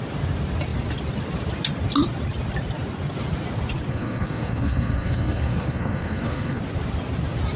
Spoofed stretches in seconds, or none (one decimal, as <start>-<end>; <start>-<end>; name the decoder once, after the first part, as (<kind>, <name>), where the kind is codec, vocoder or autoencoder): 3.9-6.6 (codec, SNAC)